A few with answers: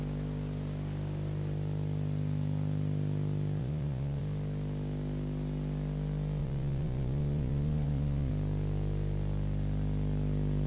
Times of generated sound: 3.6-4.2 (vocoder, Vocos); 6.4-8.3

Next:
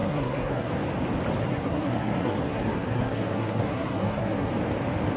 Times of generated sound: 0.0-0.7 (codec, SNAC); 1.4-4.5

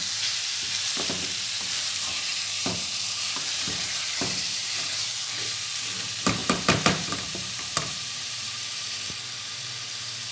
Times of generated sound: 0.0-10.3 (vocoder, BigVGAN v2)